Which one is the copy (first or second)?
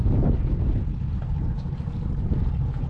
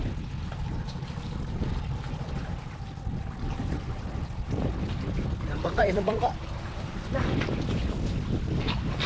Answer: second